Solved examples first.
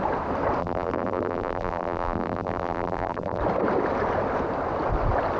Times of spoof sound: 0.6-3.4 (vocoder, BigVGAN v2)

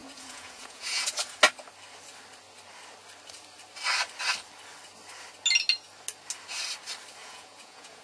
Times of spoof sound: 0.0-1.1 (vocoder, Vocos); 7.2-8.0

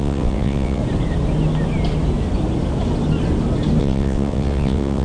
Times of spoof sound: 0.0-0.8 (vocoder, WaveNeXt); 3.8-5.0

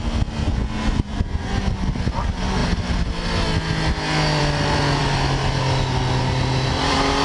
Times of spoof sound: 0.4-1.6 (vocoder, Vocos)

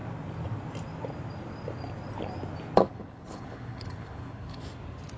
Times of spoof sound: 2.9-4.6 (codec, HILCodec)

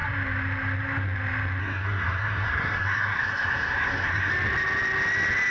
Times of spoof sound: 1.6-4.3 (codec, SNAC)

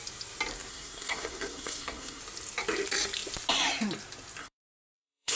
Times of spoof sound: 0.7-2.2 (codec, SNAC); 4.4-5.4

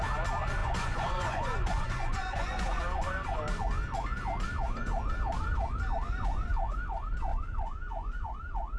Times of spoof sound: 0.6-2.8 (vocoder, Vocos); 7.3-8.3